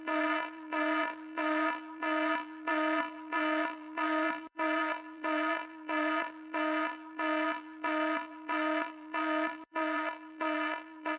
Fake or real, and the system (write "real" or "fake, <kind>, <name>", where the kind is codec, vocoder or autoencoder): fake, vocoder, BigVGAN v2